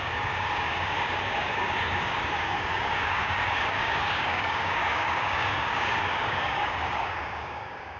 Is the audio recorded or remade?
remade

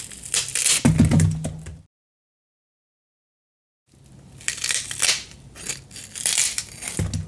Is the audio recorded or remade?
recorded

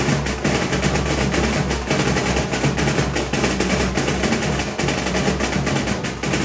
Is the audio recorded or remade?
recorded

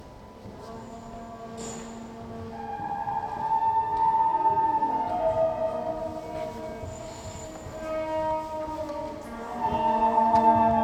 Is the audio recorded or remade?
recorded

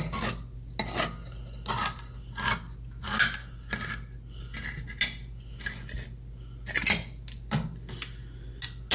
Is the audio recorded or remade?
recorded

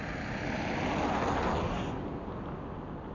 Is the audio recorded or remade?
recorded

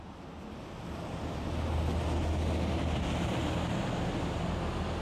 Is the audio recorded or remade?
recorded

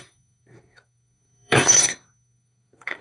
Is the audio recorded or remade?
remade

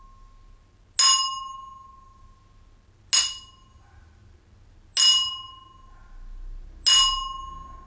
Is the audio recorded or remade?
recorded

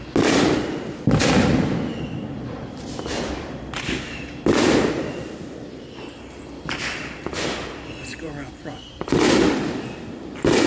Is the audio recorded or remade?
recorded